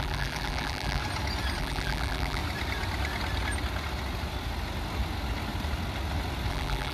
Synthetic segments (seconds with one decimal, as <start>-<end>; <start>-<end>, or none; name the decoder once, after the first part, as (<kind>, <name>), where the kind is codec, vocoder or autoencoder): 0.0-1.0 (vocoder, BigVGAN v2); 1.6-2.4; 6.5-6.9